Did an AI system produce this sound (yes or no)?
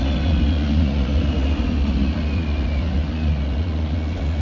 yes